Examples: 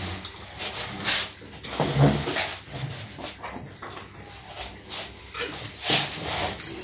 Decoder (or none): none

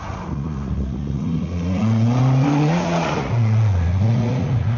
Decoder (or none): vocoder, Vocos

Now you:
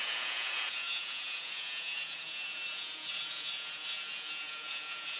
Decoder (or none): vocoder, Vocos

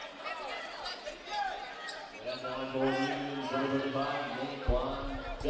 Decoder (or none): none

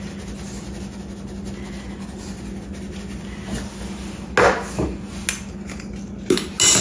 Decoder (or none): none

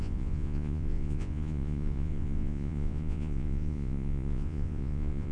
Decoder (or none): vocoder, Vocos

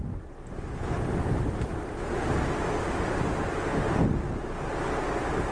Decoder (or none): none